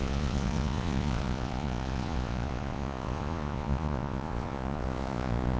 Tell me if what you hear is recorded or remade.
remade